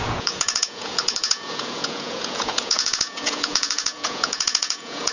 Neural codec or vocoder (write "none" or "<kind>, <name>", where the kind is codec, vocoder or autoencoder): vocoder, Vocos